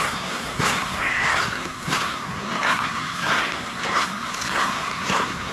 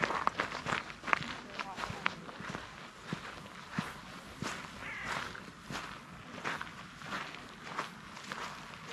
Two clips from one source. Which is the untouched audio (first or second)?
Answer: second